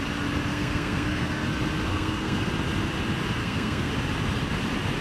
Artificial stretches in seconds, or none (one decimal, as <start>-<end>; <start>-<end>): 0.5-1.3; 1.9-2.5; 3.4-3.9